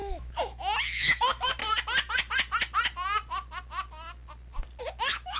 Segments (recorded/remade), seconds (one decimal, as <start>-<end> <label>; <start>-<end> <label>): 0.0-1.6 remade; 1.6-4.8 recorded; 4.8-5.4 remade